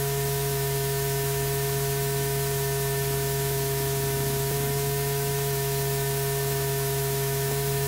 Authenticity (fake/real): fake